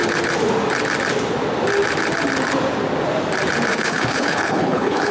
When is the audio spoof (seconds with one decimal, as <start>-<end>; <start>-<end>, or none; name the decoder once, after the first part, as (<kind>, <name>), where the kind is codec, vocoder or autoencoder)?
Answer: 3.7-5.1 (codec, HILCodec)

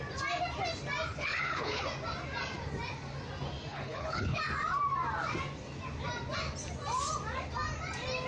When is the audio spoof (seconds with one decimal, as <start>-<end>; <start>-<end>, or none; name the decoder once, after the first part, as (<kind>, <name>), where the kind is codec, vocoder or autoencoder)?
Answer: 1.1-1.8 (codec, HILCodec); 3.7-4.4

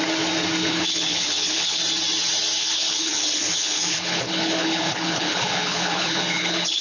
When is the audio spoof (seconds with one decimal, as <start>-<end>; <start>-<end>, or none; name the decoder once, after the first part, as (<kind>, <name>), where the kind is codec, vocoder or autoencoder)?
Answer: 0.6-1.8 (codec, HILCodec); 2.6-6.8

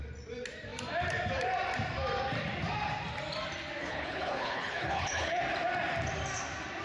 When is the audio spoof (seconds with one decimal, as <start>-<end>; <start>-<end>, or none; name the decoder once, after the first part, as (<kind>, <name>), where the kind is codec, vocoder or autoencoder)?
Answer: 3.8-5.4 (codec, HILCodec)

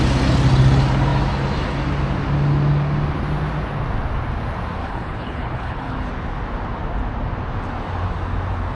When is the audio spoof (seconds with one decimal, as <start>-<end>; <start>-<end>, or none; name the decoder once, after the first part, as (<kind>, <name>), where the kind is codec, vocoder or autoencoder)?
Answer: 4.8-6.1 (codec, HILCodec)

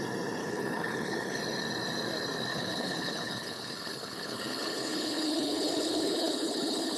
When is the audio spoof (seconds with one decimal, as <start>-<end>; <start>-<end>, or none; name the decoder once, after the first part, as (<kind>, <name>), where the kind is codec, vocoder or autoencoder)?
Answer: 0.4-1.4 (codec, HILCodec); 2.5-7.0

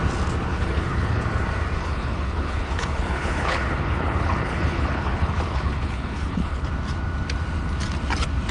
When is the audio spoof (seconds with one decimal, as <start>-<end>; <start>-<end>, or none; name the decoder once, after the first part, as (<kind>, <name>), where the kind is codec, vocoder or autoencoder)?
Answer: 0.5-1.2 (codec, HILCodec); 1.8-6.7

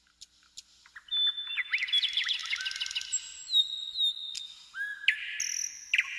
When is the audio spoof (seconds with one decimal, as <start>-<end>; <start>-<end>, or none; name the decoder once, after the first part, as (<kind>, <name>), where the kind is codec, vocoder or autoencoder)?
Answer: none